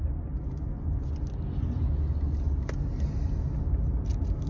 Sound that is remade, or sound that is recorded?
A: recorded